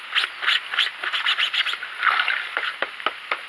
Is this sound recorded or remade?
recorded